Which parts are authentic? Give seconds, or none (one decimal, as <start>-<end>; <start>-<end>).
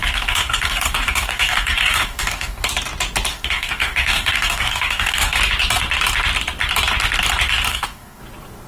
2.7-3.3; 5.4-7.7; 8.2-8.7